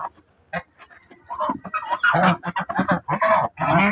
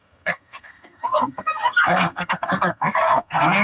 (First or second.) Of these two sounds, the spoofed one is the second